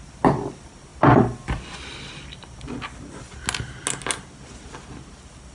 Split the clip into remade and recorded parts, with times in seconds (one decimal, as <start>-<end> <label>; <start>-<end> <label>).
0.0-5.5 recorded